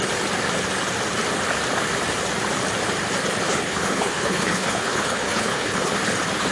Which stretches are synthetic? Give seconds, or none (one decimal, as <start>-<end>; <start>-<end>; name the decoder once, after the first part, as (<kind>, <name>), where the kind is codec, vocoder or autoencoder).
3.5-5.9 (codec, HILCodec)